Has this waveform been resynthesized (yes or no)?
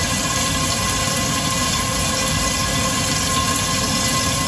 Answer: no